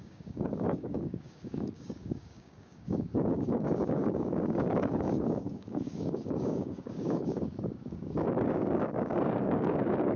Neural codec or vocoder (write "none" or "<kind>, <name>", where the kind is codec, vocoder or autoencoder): codec, DAC